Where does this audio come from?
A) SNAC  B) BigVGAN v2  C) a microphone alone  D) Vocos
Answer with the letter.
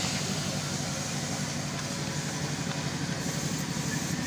C